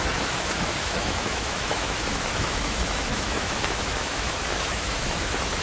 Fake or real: fake